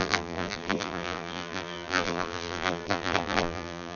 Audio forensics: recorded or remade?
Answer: remade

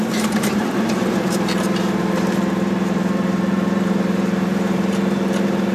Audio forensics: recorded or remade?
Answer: remade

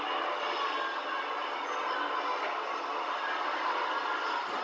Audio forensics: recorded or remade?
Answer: recorded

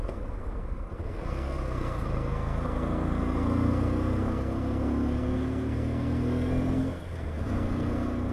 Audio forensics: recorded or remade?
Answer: remade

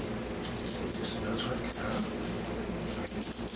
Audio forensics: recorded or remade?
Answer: recorded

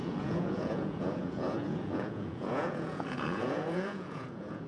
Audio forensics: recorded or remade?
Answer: remade